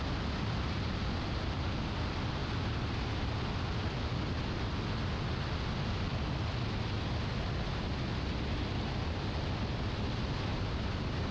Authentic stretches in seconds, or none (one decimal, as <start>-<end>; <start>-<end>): 0.0-10.5